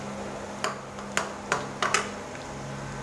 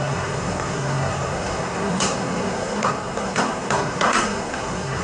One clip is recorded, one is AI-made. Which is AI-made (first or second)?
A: second